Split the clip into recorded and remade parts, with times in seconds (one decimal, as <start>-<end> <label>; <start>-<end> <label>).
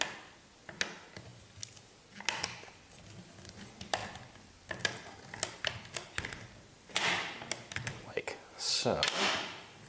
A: 0.0-9.9 recorded